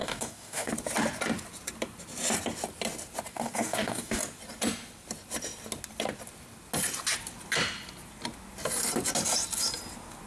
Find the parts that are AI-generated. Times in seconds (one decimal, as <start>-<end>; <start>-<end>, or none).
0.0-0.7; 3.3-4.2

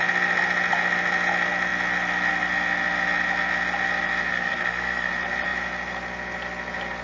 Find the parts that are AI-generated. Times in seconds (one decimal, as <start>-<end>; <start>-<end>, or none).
4.3-5.1

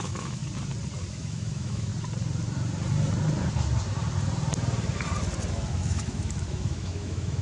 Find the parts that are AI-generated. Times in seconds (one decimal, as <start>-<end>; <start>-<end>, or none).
0.0-0.4; 1.1-1.9; 5.5-7.4